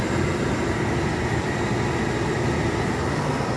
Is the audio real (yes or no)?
yes